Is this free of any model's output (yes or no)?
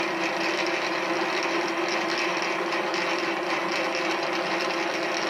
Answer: yes